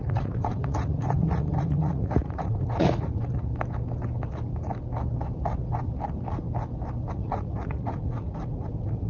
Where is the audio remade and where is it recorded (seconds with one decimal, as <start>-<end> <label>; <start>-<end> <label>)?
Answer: 0.0-3.5 remade; 3.5-7.1 recorded; 7.1-9.1 remade